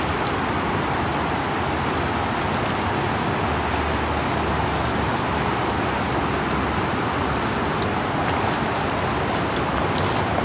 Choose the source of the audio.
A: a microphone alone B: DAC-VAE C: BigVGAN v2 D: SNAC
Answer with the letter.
A